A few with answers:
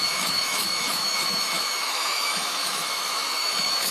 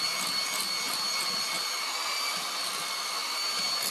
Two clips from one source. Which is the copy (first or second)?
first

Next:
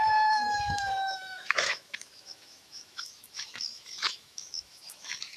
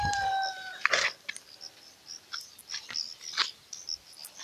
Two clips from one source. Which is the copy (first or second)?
first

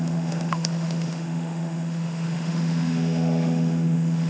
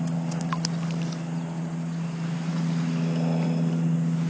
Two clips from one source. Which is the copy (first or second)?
first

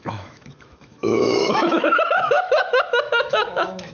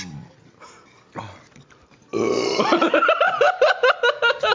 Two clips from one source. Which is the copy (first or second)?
first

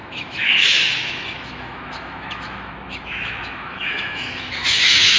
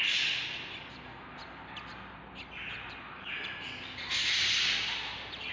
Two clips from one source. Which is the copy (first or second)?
first